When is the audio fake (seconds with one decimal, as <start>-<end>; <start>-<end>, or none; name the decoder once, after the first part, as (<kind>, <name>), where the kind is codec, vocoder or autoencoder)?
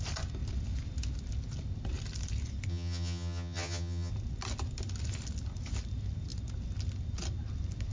2.7-4.1 (vocoder, HiFi-GAN)